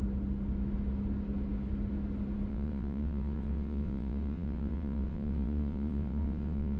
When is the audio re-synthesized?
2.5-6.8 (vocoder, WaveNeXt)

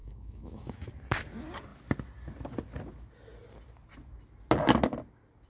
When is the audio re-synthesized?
0.0-0.9 (autoencoder, DAC-VAE)

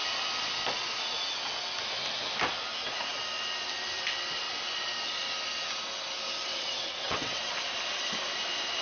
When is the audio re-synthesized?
6.5-7.4 (vocoder, WaveNeXt)

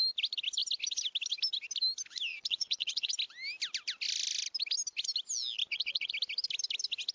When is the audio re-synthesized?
2.3-3.1 (vocoder, Vocos); 5.6-6.1

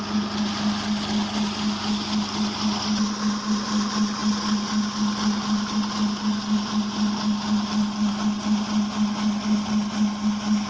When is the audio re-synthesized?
none